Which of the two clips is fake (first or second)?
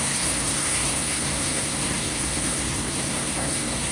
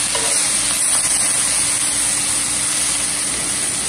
first